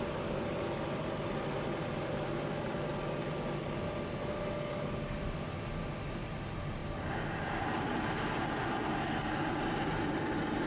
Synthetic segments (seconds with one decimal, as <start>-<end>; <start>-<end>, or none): 6.8-8.4